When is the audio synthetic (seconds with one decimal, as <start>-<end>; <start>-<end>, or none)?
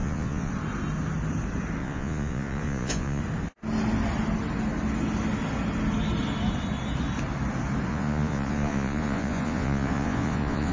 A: 0.0-0.5; 1.8-3.2; 7.9-10.7